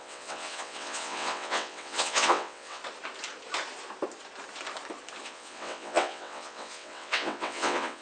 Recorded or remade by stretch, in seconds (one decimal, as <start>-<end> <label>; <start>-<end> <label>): 0.0-2.8 remade; 2.8-5.2 recorded; 5.2-8.0 remade